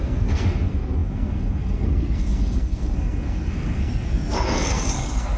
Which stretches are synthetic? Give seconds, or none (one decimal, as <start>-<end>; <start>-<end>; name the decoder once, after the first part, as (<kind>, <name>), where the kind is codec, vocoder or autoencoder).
0.0-5.4 (codec, SNAC)